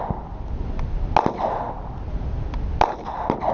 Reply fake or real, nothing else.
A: real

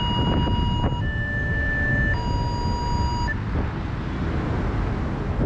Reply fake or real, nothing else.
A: real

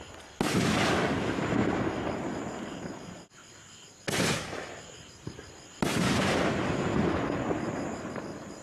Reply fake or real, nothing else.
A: real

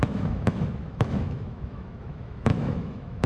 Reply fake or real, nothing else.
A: fake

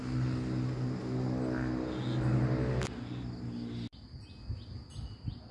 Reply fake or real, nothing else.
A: real